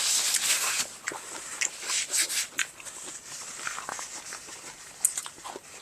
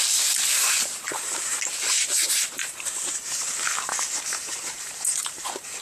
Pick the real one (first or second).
first